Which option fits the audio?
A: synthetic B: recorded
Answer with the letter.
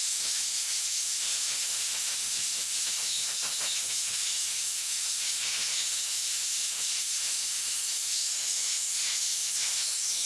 A